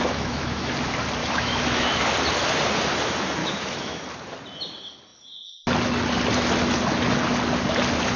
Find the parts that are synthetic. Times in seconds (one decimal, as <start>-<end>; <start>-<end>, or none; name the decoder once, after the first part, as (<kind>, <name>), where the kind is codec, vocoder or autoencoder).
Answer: 0.0-0.7 (autoencoder, DAC-VAE); 1.2-2.1; 3.4-4.0

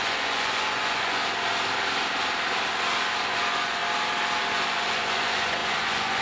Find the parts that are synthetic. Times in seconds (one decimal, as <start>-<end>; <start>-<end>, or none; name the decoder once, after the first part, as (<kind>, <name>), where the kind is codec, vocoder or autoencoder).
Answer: 0.0-1.2 (vocoder, Vocos); 3.2-3.8; 4.5-6.2